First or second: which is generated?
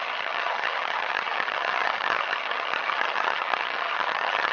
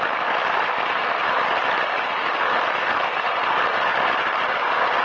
first